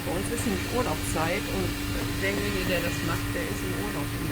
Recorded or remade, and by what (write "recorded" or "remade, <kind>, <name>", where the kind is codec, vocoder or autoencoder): recorded